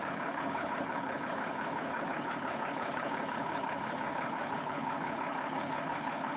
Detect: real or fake fake